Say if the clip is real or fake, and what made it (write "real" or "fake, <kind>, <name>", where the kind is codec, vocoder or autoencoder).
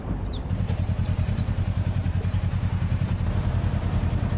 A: fake, vocoder, BigVGAN v2